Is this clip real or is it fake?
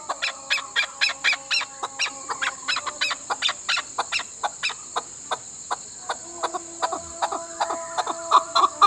real